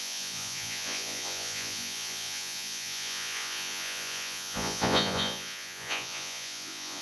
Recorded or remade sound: remade